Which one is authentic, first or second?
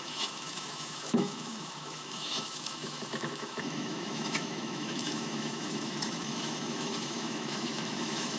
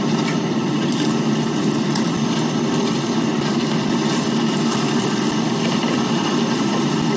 second